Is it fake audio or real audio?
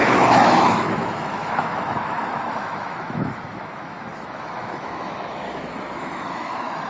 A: fake